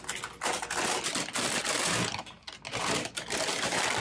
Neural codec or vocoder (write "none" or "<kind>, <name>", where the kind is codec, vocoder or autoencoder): none